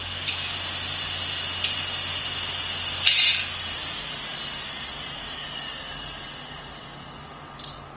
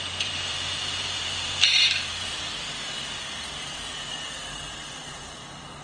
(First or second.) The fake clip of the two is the second